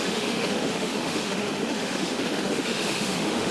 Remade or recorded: remade